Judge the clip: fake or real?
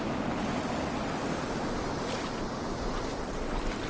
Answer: real